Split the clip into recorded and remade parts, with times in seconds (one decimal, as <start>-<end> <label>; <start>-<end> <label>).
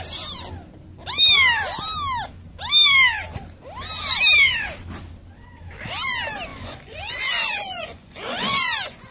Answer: 0.0-6.5 recorded; 6.5-9.1 remade